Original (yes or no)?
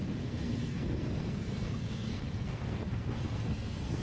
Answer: no